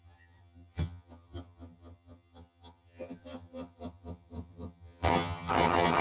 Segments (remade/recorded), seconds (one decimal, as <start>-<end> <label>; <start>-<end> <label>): 0.0-6.0 remade